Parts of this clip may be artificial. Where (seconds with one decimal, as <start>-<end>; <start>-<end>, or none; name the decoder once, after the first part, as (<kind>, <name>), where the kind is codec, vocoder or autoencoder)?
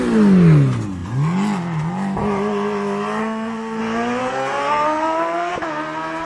3.2-3.8 (codec, SNAC); 4.2-5.5